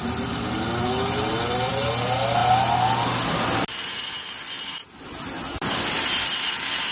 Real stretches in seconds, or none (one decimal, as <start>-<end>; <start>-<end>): 0.0-6.9

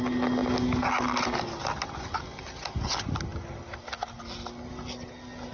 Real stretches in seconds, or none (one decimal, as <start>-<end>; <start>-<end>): 0.0-5.5

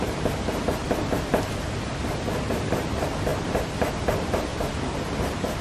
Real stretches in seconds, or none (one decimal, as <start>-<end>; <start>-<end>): 0.8-2.5

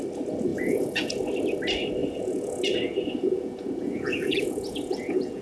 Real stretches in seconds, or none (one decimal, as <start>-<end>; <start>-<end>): 0.0-0.5; 1.1-2.0

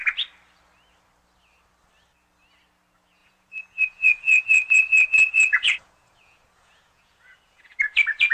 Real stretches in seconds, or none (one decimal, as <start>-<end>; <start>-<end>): 0.0-3.2; 7.8-8.3

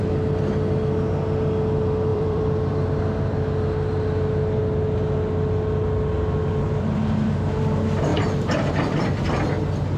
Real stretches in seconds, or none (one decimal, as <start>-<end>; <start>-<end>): 0.0-2.1; 2.7-8.1; 9.2-10.0

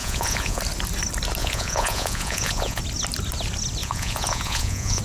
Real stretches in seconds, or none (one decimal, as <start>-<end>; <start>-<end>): 0.6-1.4; 2.8-3.8

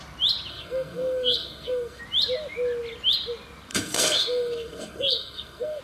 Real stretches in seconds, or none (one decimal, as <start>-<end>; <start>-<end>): 0.0-0.5; 2.0-3.7